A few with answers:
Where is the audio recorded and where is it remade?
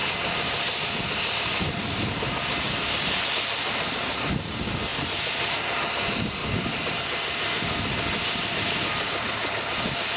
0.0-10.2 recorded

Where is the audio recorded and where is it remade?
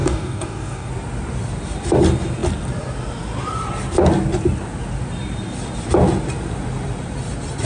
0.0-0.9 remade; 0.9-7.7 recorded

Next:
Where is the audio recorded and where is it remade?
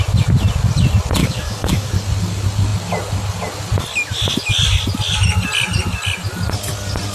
0.0-1.2 recorded; 1.2-1.9 remade; 1.9-7.1 recorded